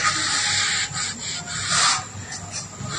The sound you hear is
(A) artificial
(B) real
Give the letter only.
B